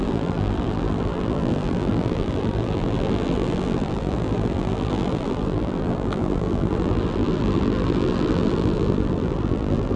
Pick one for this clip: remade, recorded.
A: remade